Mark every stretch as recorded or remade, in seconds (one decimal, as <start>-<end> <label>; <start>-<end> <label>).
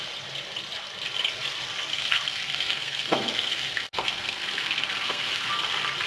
0.0-1.9 recorded; 1.9-5.5 remade; 5.5-6.1 recorded